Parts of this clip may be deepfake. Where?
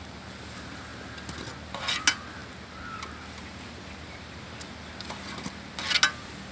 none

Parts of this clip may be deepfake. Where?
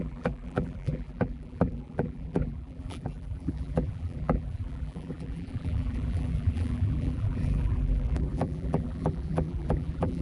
0.0-10.2 (vocoder, BigVGAN v2)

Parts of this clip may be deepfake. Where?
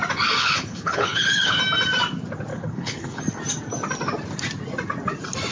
0.4-1.6 (codec, HILCodec); 2.5-3.2